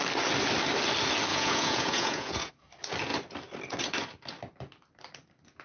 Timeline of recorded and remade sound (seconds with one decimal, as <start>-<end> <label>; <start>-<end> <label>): 0.0-1.3 recorded; 1.3-2.5 remade; 2.5-5.6 recorded